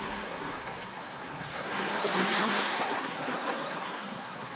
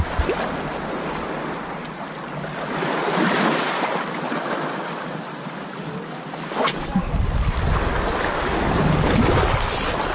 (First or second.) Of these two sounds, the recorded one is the second